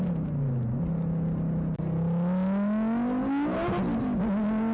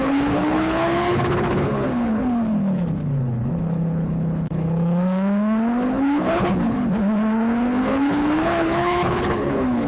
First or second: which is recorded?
first